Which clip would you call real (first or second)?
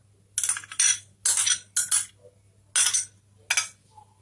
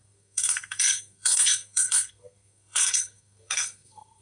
first